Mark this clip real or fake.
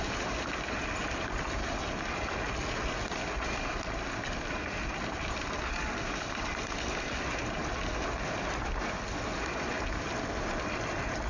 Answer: real